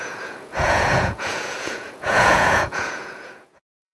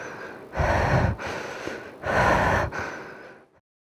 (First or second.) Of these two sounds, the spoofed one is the first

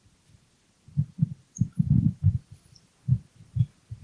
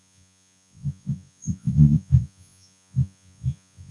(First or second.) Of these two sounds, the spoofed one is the second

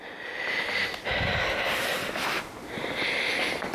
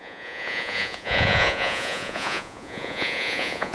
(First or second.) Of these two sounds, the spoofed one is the second